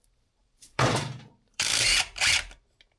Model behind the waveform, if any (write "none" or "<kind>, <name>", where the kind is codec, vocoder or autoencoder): vocoder, BigVGAN v2